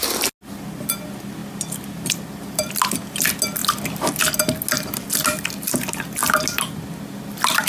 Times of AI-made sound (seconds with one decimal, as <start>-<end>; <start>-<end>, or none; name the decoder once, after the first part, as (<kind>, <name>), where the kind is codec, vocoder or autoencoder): none